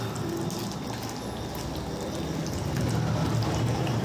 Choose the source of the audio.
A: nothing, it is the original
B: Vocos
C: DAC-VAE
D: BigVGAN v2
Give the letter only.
A